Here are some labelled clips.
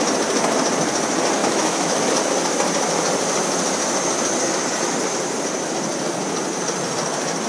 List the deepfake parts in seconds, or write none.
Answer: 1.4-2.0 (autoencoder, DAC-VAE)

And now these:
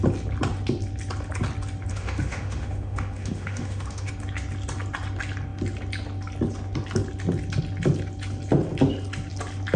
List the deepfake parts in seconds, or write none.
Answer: 1.9-4.1 (autoencoder, DAC-VAE)

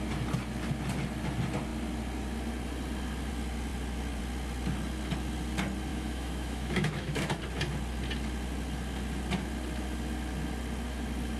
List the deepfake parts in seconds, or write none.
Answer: 5.9-7.4 (autoencoder, DAC-VAE)